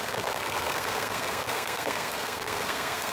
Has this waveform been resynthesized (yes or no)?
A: yes